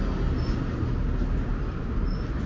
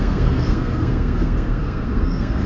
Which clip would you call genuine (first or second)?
first